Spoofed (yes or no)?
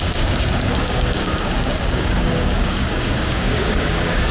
yes